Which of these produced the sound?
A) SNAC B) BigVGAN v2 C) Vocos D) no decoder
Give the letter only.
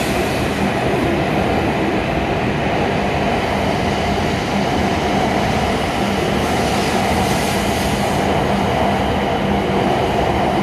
D